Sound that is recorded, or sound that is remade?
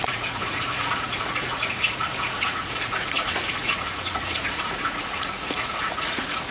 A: remade